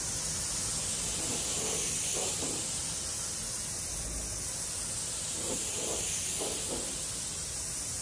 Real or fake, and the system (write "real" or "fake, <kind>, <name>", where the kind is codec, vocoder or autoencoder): real